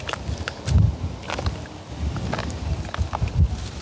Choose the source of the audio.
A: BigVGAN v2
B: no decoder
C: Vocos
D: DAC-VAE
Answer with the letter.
B